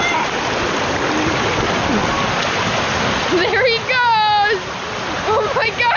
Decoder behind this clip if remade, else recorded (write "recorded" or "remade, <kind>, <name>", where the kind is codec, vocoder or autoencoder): recorded